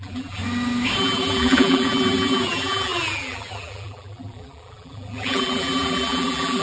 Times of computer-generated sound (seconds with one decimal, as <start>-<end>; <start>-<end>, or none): 0.0-0.4; 1.0-6.6